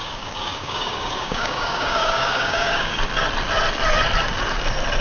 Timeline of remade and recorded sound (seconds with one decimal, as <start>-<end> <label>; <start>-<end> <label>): 0.0-3.0 remade; 3.0-5.0 recorded